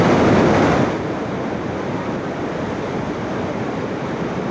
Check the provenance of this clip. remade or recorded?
recorded